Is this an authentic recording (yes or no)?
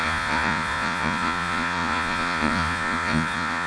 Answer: no